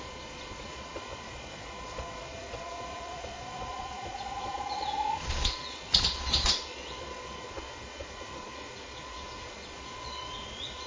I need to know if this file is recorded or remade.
remade